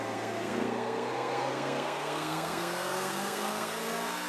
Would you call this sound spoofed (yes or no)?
yes